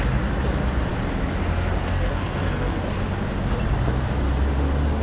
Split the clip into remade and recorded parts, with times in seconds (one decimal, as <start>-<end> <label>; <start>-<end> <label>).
0.0-1.9 recorded; 1.9-2.8 remade; 2.8-5.0 recorded